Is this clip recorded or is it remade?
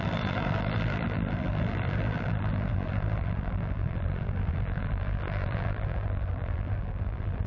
remade